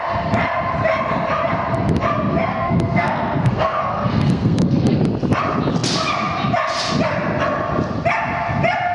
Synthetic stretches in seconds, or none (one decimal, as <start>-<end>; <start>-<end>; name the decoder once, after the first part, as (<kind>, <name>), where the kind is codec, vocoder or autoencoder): 2.5-5.0 (codec, SNAC)